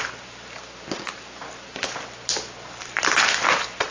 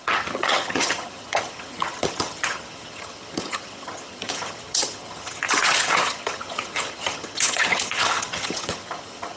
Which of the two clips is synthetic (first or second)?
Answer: second